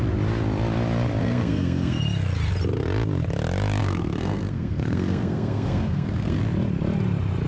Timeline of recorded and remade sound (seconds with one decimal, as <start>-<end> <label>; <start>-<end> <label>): 0.0-1.2 recorded; 1.2-2.0 remade; 2.0-3.8 recorded; 3.8-6.4 remade; 6.4-7.5 recorded